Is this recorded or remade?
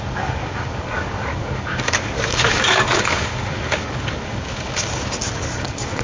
remade